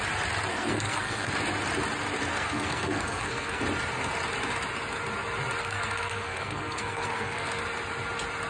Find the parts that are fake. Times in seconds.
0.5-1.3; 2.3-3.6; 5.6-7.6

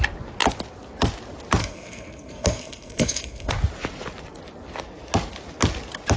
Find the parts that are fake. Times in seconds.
1.6-3.5

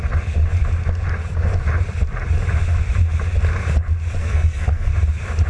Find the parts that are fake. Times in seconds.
4.2-4.9

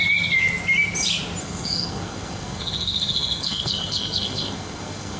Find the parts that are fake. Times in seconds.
1.4-5.2

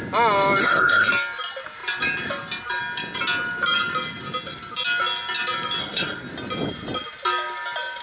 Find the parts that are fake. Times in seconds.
0.6-1.1; 5.8-6.3

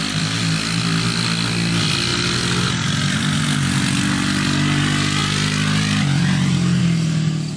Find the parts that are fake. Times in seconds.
none